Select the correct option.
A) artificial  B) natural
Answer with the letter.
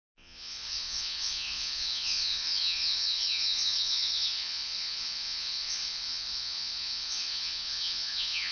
A